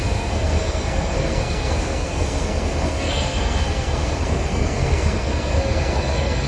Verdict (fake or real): fake